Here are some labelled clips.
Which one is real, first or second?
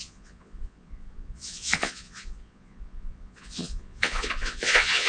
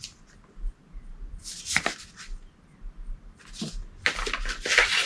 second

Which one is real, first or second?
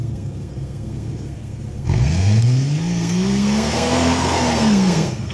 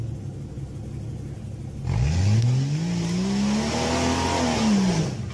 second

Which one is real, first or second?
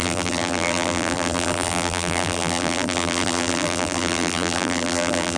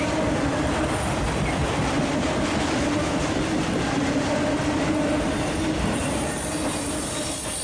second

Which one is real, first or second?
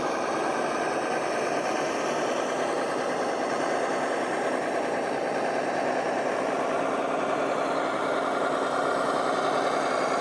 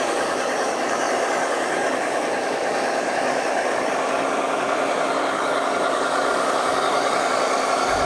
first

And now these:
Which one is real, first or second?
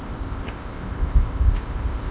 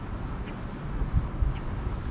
second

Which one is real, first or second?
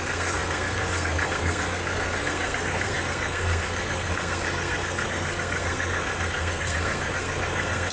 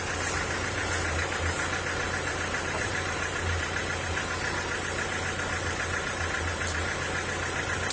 second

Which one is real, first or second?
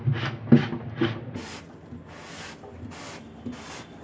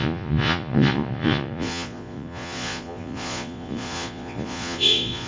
first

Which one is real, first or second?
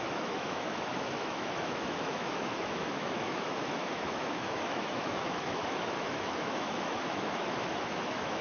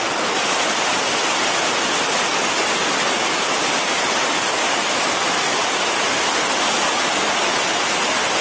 second